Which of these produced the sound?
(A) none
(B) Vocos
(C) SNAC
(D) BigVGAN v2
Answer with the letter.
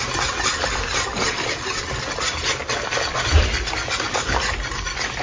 A